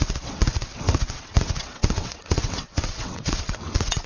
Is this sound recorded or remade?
remade